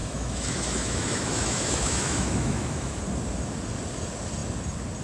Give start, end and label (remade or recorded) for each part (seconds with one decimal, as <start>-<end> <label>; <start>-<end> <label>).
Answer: 0.0-3.0 remade; 3.0-5.0 recorded

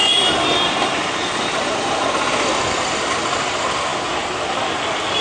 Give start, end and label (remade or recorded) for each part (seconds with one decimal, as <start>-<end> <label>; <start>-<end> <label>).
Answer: 0.0-5.2 recorded

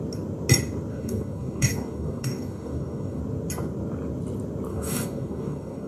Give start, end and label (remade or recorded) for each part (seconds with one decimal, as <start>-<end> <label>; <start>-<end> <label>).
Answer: 0.0-0.9 recorded; 0.9-3.2 remade; 3.2-4.7 recorded; 4.7-5.9 remade

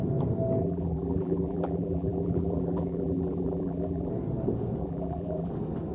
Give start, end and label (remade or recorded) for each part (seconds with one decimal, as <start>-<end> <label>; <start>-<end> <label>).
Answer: 0.0-0.6 recorded; 0.6-4.1 remade; 4.1-4.8 recorded; 4.8-5.5 remade; 5.5-5.9 recorded